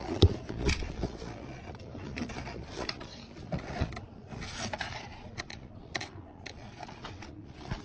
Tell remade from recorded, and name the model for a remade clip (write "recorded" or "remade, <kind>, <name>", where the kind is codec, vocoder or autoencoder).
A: remade, vocoder, Vocos